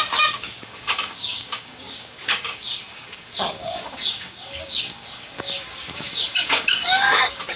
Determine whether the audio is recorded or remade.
remade